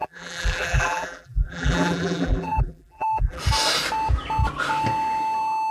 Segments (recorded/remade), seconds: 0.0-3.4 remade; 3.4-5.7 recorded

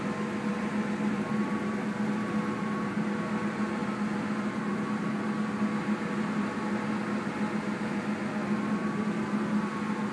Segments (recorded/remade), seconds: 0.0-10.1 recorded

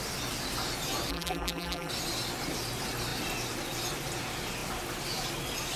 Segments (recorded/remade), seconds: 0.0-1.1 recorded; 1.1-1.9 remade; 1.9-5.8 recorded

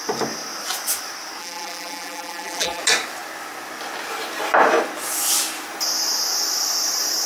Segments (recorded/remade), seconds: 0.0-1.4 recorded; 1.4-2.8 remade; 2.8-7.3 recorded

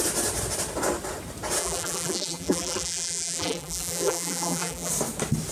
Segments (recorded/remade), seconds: 0.0-1.6 recorded; 1.6-4.9 remade; 4.9-5.5 recorded

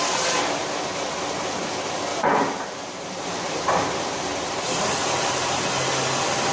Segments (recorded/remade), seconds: 0.0-2.1 recorded; 2.1-5.7 remade; 5.7-6.5 recorded

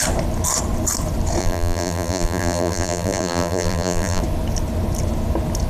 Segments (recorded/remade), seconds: 0.0-1.4 recorded; 1.4-4.2 remade; 4.2-5.7 recorded